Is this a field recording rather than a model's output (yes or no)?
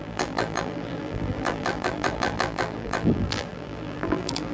no